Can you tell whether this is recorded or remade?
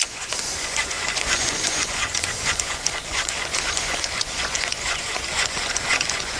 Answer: remade